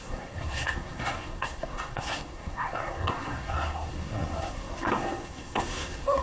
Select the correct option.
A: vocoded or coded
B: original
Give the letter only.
A